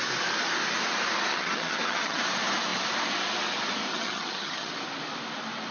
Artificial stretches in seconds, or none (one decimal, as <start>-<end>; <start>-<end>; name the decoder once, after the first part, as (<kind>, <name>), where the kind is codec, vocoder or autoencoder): 1.3-2.2 (vocoder, HiFi-GAN); 3.9-4.7

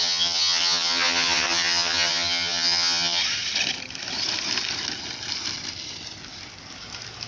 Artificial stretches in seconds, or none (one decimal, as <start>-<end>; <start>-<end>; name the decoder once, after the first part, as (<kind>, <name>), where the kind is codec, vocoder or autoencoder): 0.0-3.2 (vocoder, HiFi-GAN)